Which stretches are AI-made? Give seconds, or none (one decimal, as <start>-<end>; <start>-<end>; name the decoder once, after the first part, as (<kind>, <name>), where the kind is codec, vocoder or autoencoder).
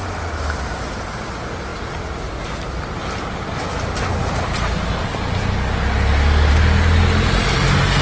none